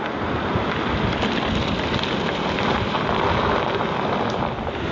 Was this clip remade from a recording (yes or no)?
no